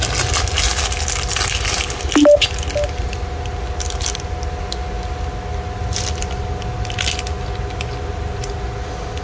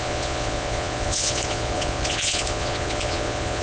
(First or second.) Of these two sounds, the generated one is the second